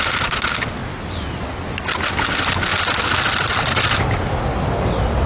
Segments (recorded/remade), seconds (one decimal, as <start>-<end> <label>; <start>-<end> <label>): 0.0-5.3 recorded